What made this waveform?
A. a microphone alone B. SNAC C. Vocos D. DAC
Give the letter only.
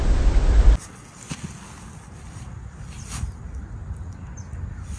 A